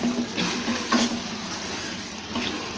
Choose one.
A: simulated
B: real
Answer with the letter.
B